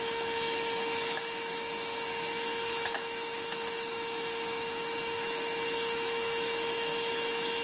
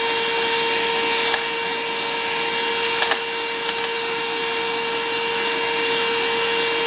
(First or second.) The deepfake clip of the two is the first